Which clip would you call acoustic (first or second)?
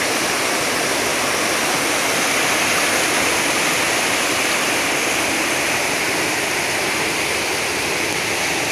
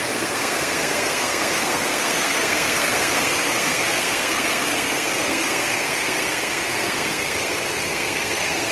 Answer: first